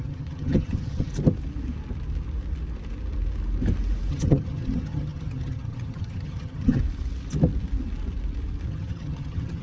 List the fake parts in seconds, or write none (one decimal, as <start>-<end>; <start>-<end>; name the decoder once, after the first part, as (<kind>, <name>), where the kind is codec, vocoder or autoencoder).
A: 0.0-1.1 (vocoder, HiFi-GAN); 4.1-6.8; 8.7-9.6